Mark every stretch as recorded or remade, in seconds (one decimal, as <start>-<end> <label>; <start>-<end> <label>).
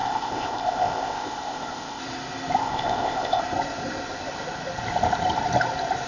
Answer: 0.0-2.0 remade; 2.0-2.6 recorded; 2.6-3.4 remade; 3.4-6.1 recorded